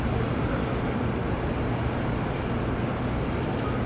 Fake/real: real